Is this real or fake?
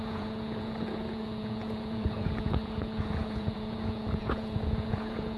fake